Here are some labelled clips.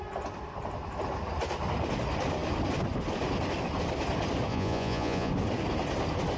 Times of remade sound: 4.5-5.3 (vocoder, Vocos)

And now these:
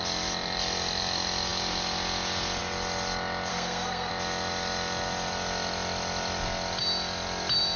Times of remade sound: 3.5-4.1 (codec, SNAC)

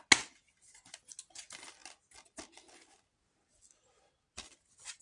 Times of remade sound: none